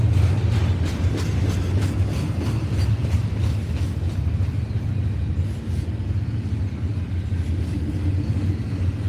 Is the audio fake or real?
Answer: real